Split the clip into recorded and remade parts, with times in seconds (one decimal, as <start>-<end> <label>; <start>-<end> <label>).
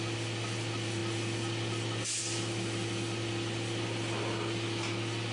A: 0.0-5.3 recorded